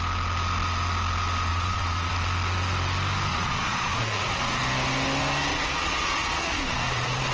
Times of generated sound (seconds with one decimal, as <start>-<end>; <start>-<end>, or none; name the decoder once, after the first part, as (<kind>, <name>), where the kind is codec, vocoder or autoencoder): 1.5-2.1 (vocoder, Vocos); 3.3-4.6; 5.5-7.3